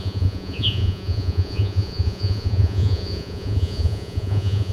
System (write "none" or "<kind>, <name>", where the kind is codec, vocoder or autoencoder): vocoder, Vocos